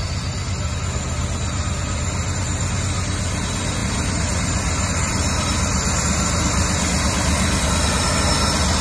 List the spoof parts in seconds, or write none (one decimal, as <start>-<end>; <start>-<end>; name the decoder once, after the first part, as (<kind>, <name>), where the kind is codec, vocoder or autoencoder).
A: 3.8-7.7 (vocoder, BigVGAN v2)